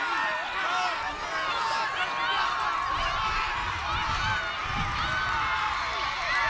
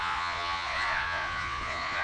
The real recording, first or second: first